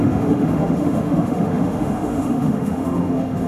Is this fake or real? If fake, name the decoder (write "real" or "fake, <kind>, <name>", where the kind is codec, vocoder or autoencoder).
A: fake, autoencoder, DAC-VAE